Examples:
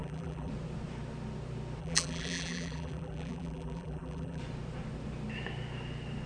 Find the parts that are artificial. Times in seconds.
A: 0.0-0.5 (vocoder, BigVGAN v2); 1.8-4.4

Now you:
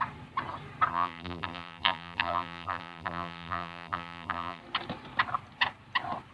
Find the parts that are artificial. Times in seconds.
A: 0.9-4.6 (vocoder, BigVGAN v2)

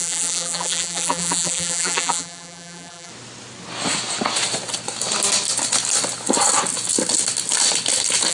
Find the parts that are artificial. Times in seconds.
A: 0.0-3.1 (vocoder, BigVGAN v2)

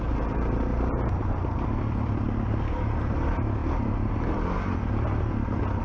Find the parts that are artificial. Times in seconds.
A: 0.0-0.7 (vocoder, BigVGAN v2); 2.7-5.8

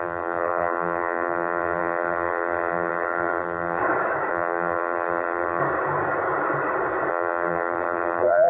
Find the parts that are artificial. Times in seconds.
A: 0.0-3.8 (vocoder, BigVGAN v2); 4.3-5.6; 7.1-8.5